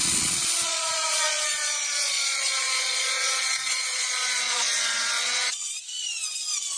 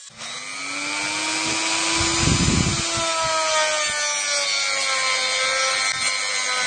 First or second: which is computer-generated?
first